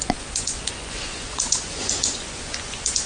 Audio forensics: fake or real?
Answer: fake